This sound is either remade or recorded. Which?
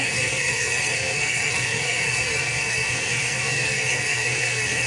remade